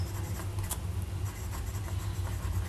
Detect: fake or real real